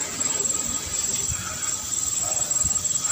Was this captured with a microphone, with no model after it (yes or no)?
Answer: yes